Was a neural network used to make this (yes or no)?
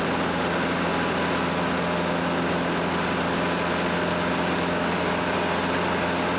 no